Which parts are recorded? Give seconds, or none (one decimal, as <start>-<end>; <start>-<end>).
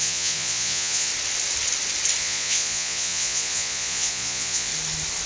1.1-2.2; 4.7-5.3